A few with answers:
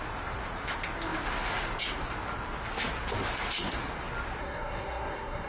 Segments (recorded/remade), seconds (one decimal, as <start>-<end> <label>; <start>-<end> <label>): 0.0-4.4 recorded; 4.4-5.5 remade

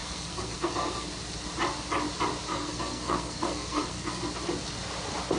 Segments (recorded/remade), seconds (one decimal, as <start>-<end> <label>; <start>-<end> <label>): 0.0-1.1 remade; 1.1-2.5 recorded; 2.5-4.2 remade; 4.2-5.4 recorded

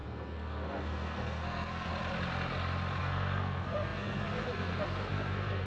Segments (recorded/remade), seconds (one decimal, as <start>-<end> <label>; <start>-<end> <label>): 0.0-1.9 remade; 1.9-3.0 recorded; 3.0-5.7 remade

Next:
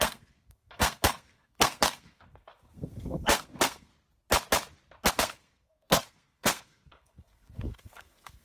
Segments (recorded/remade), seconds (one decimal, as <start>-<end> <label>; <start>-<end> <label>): 0.0-3.9 remade; 3.9-5.1 recorded; 5.1-8.4 remade

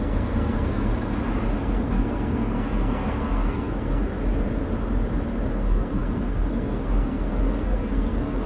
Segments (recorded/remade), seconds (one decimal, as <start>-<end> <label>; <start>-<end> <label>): 0.0-0.9 remade; 0.9-1.6 recorded; 1.6-4.1 remade; 4.1-5.5 recorded; 5.5-8.5 remade

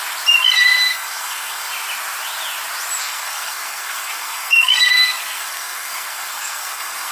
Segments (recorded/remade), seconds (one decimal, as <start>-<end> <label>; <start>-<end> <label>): 0.0-0.9 recorded; 0.9-1.7 remade; 1.7-3.0 recorded; 3.0-7.1 remade

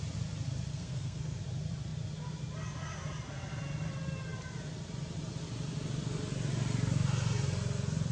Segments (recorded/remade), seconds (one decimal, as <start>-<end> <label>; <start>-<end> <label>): 0.0-0.7 recorded; 0.7-1.4 remade; 1.4-8.1 recorded